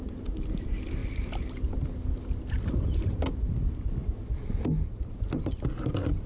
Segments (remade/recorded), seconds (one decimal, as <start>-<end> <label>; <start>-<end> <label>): 0.0-6.3 recorded